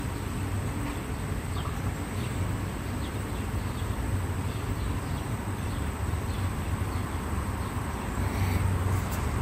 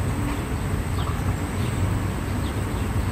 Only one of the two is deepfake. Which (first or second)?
first